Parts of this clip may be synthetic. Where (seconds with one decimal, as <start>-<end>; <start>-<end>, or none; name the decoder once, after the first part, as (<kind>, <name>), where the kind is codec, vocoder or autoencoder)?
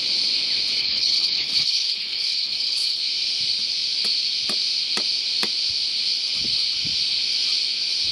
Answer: 0.8-3.0 (codec, HILCodec)